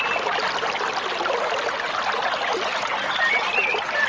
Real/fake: real